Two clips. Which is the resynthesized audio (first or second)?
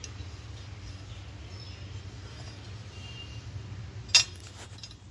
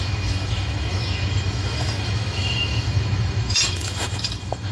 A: second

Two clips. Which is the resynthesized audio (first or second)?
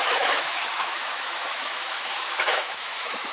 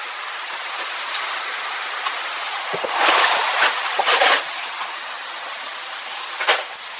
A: first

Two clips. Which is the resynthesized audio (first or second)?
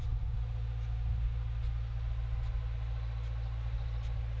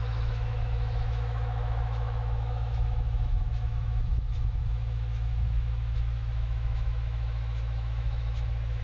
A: second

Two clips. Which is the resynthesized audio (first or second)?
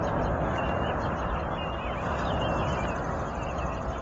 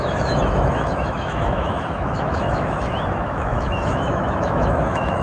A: second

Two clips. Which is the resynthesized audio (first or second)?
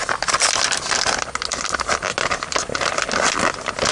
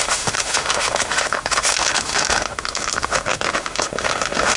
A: second